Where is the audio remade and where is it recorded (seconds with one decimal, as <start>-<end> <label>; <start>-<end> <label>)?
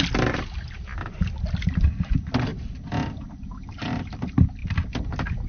0.0-5.5 recorded